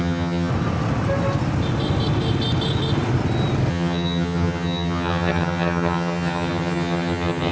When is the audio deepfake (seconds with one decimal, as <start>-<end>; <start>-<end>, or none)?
0.0-0.5; 3.7-7.5